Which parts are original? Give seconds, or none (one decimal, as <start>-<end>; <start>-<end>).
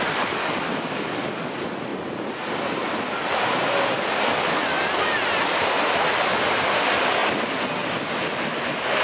0.0-0.4; 1.5-9.0